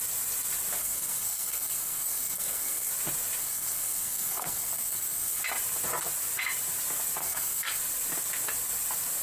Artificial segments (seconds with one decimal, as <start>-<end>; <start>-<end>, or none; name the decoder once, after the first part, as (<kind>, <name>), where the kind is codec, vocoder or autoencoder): 0.8-2.9 (codec, SNAC); 3.4-5.4; 7.2-7.8